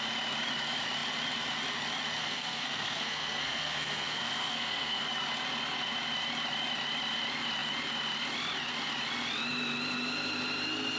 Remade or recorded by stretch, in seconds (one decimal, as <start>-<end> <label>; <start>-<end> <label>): 0.0-2.2 recorded; 2.2-5.0 remade; 5.0-11.0 recorded